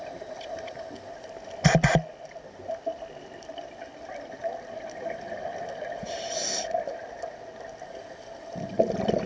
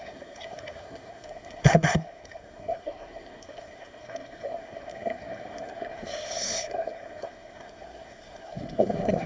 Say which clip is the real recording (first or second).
first